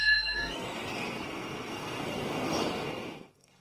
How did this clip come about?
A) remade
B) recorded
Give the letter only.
A